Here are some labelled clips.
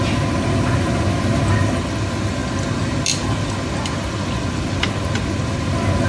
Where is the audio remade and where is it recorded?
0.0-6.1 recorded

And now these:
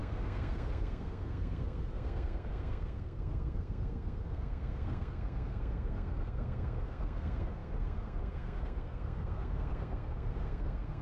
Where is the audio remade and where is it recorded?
0.0-11.0 remade

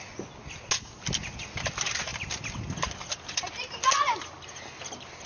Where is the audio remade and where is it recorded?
0.0-5.3 recorded

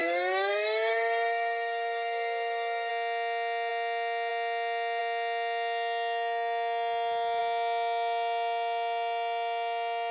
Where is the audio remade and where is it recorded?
0.0-2.9 remade; 2.9-10.1 recorded

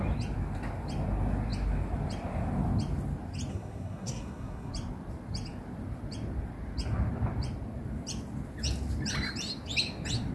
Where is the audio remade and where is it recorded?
0.0-3.5 recorded; 3.5-4.7 remade; 4.7-10.3 recorded

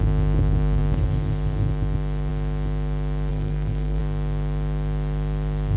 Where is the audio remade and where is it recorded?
0.0-3.3 recorded; 3.3-4.0 remade; 4.0-5.8 recorded